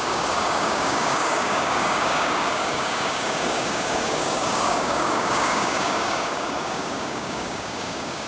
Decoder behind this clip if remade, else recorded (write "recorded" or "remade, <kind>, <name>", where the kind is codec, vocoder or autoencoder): remade, codec, DAC